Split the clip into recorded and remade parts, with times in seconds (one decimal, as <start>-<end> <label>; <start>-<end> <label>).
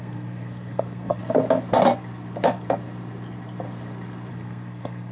0.0-1.2 remade; 1.2-4.3 recorded; 4.3-5.1 remade